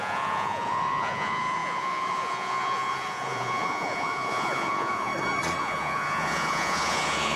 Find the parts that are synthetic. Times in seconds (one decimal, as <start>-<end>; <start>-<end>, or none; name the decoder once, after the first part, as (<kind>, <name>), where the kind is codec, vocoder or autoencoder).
0.0-5.1 (vocoder, Vocos); 5.6-7.4